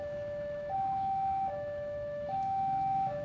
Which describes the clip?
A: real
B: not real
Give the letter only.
B